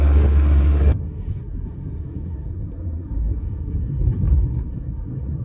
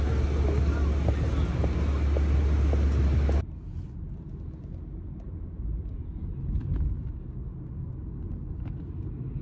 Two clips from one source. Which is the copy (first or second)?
first